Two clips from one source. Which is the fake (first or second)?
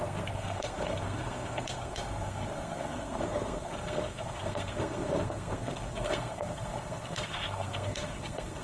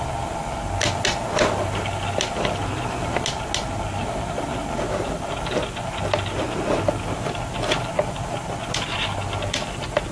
first